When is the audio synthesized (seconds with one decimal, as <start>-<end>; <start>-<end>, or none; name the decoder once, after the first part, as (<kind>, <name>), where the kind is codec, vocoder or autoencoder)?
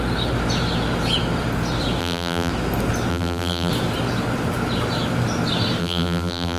2.0-2.5 (vocoder, BigVGAN v2); 3.1-3.7; 5.8-6.6